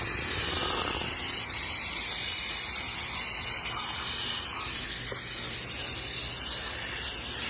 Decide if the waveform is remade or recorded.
recorded